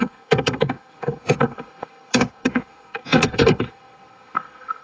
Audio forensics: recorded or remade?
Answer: remade